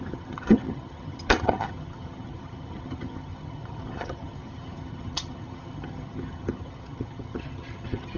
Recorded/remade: remade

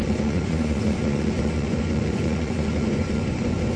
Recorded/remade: remade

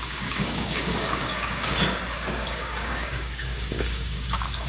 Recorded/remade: remade